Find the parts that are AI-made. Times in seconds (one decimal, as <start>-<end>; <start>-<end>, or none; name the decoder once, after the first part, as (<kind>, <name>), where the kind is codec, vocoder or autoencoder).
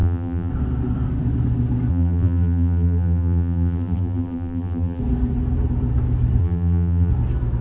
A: 0.0-0.5 (vocoder, BigVGAN v2); 1.9-5.0; 6.4-7.1